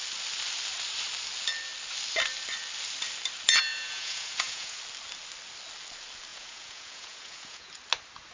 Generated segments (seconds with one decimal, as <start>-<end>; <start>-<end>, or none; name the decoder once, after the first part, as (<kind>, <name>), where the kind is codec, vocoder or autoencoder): 3.7-4.8 (vocoder, Vocos); 6.3-7.7